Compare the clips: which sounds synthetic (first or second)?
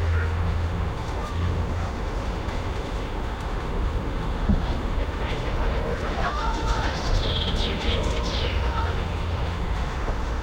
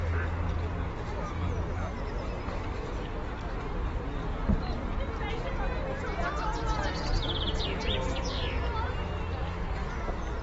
first